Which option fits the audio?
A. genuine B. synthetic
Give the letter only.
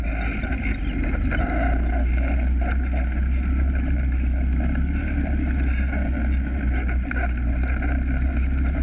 A